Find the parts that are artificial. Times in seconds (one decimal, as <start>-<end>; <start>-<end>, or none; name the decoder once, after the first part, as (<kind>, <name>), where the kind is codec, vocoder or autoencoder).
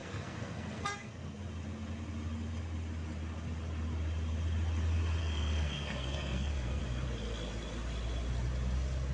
0.0-1.4 (codec, SNAC); 5.2-6.8